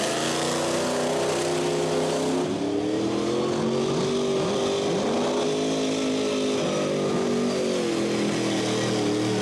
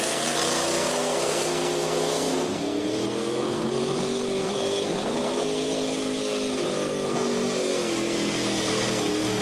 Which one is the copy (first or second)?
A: second